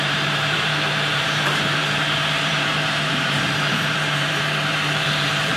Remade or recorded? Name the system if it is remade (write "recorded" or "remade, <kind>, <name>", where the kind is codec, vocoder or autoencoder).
remade, vocoder, BigVGAN v2